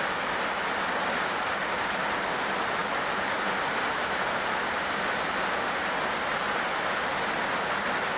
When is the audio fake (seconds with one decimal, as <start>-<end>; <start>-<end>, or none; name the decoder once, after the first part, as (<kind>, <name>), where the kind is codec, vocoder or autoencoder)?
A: none